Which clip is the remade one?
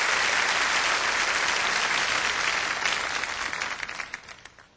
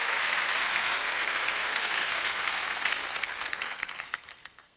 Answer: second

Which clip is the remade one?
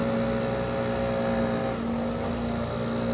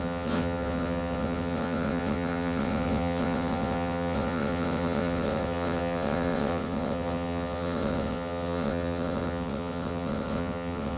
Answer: second